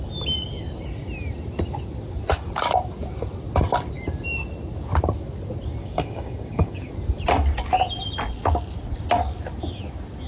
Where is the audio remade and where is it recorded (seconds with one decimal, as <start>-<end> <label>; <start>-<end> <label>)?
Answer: 0.0-5.8 recorded; 5.8-6.9 remade; 6.9-10.3 recorded